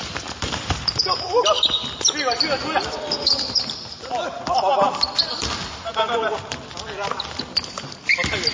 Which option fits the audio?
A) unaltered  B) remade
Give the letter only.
A